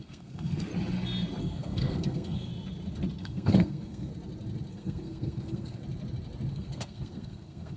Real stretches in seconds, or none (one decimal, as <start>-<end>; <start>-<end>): 0.7-1.4; 2.5-3.2; 4.1-4.7; 5.8-6.5